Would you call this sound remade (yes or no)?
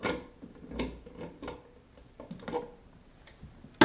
no